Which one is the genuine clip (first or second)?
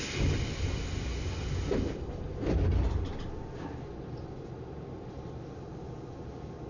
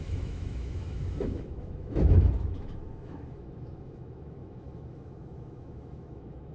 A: first